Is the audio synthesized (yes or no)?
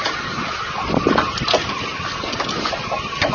no